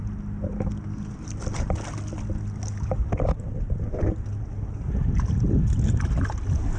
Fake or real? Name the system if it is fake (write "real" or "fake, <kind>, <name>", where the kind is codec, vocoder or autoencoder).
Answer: real